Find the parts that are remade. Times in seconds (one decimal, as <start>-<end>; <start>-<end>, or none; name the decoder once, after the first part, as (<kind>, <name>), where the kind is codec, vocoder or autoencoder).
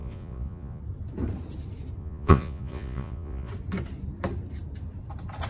0.0-0.8 (vocoder, Vocos); 2.0-3.5